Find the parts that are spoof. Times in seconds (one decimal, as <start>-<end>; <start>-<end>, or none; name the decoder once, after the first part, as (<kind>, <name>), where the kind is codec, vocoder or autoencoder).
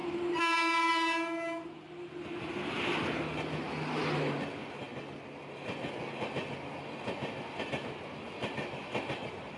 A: none